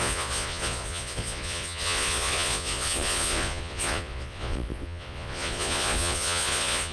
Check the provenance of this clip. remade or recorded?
remade